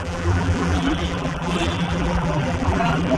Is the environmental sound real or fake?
fake